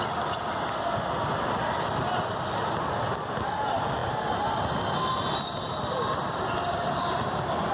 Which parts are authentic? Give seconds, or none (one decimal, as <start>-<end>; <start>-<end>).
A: 0.0-7.7